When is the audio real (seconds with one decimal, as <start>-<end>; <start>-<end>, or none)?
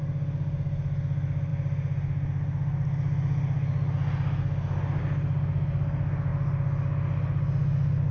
0.0-8.1